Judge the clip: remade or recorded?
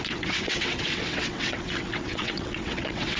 remade